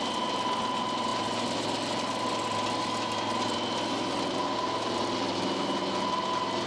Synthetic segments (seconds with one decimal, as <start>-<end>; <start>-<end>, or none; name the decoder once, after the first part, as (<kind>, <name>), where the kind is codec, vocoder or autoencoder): none